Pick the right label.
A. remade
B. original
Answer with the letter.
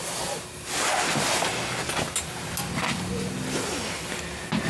B